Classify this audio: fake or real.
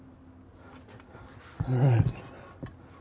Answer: real